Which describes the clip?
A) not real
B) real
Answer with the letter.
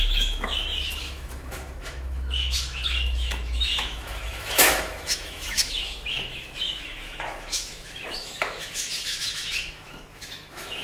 A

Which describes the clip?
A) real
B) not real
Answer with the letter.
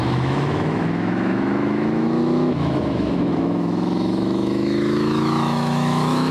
B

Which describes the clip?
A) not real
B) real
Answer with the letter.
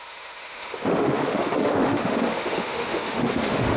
A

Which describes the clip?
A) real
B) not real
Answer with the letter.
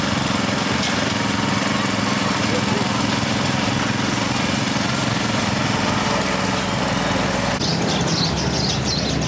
A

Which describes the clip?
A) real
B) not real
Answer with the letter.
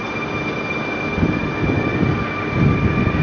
A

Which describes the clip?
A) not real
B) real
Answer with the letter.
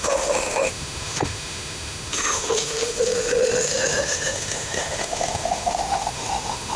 A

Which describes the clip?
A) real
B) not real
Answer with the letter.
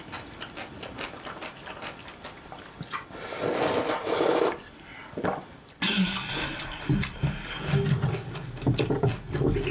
A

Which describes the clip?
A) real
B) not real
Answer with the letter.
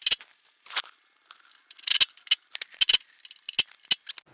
A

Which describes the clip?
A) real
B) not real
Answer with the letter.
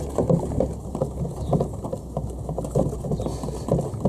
A